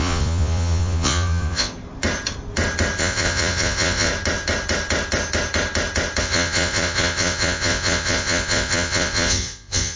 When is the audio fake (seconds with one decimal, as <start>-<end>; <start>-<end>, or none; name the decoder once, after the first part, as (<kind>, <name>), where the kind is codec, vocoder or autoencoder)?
0.0-1.7 (vocoder, Vocos); 3.0-4.1; 6.2-10.0